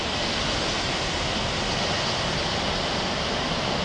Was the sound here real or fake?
real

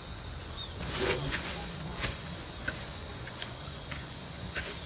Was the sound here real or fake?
fake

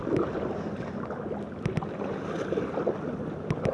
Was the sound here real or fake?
real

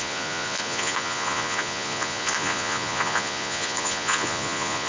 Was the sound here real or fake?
fake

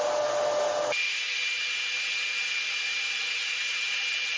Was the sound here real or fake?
real